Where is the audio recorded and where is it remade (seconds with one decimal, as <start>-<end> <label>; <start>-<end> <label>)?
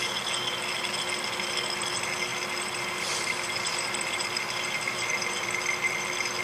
0.0-2.3 recorded; 2.3-6.4 remade